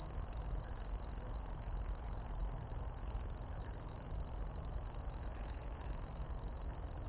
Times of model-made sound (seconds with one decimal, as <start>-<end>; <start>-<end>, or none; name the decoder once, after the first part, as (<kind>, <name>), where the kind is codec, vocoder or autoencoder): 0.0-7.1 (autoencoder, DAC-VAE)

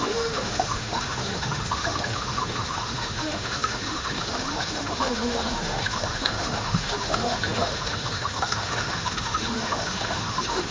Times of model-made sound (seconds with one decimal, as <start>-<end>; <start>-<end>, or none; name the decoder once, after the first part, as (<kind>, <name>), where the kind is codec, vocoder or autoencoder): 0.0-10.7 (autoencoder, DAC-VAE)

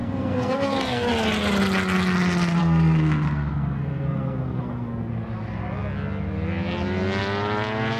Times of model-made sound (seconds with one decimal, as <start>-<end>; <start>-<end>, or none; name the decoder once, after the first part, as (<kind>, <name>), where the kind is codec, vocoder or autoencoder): 0.0-1.1 (codec, SNAC); 2.6-5.1

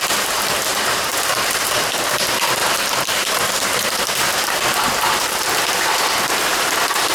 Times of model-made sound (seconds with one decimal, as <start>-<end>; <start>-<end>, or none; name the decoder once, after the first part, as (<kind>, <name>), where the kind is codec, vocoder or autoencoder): 1.1-2.1 (vocoder, BigVGAN v2); 2.6-4.0

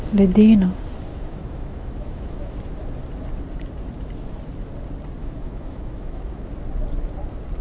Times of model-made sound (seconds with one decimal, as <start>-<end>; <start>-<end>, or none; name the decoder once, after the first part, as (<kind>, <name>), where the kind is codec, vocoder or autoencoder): 1.1-2.5 (autoencoder, DAC-VAE); 5.2-6.5

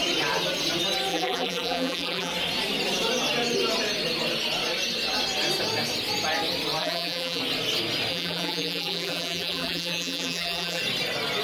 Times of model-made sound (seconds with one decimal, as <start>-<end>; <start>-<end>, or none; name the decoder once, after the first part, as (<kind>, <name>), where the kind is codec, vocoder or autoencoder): 1.1-2.3 (vocoder, BigVGAN v2); 6.8-7.4; 8.1-10.8